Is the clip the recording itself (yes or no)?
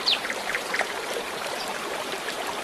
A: no